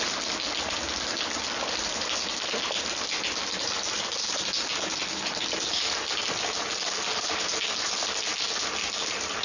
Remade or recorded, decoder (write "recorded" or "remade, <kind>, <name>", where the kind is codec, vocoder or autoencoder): recorded